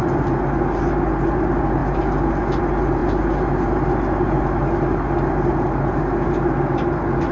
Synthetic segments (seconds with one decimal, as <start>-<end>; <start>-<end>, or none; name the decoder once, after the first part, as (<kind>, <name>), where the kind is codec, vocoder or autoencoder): none